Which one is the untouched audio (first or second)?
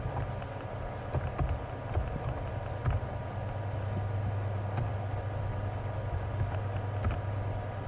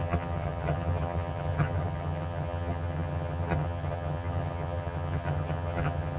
first